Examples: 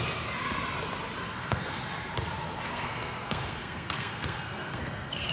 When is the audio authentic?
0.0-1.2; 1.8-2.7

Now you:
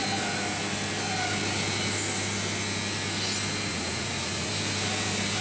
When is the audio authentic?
0.0-3.7; 4.5-5.4

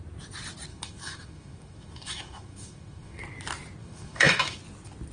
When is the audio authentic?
0.0-0.7; 3.2-3.8; 4.6-5.1

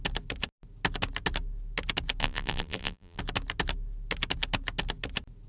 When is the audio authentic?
0.0-2.2; 3.2-5.5

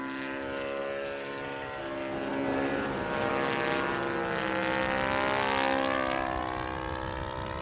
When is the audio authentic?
0.0-7.6

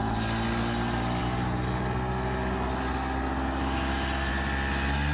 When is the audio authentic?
0.0-5.1